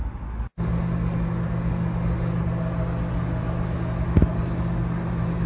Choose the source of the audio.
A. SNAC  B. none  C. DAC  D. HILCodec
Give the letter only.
B